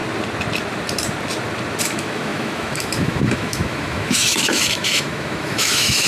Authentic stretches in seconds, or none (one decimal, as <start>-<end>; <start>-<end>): 0.0-1.8